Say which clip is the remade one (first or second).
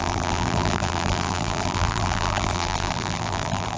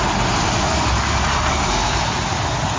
first